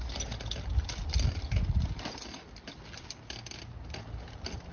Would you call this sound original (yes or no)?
yes